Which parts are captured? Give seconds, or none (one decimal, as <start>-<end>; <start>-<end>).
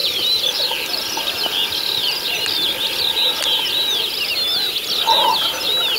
0.0-6.0